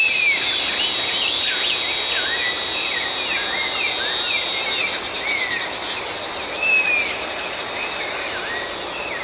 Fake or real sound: real